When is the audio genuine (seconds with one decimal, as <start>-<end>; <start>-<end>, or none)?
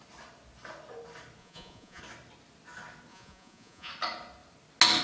0.0-1.4; 2.0-3.1; 3.9-5.0